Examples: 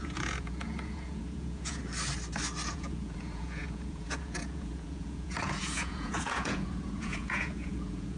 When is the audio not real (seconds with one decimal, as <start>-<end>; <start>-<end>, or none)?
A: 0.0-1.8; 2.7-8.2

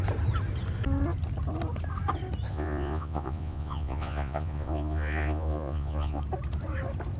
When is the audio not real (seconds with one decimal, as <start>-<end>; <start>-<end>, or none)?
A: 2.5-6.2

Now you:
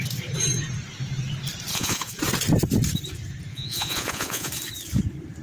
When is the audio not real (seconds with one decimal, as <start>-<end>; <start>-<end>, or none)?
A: 1.7-2.2; 3.5-4.5